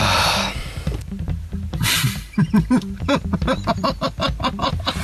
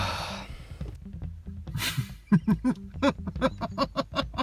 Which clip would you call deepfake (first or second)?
first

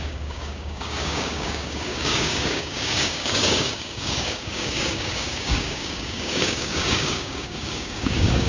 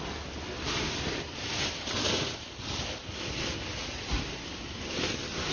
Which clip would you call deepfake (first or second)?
first